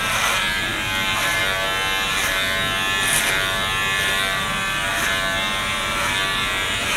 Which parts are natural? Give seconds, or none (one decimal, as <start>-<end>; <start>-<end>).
0.0-7.0